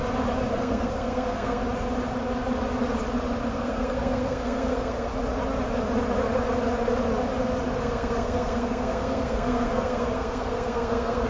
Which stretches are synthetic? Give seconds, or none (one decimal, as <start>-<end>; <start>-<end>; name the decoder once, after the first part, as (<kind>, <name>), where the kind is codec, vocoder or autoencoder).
0.5-1.6 (codec, SNAC); 3.5-5.1; 7.8-11.3